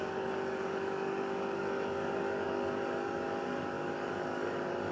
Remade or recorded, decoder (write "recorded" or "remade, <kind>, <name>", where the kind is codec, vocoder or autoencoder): remade, codec, DAC